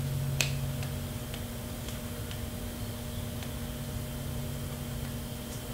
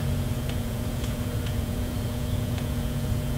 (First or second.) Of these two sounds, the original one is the first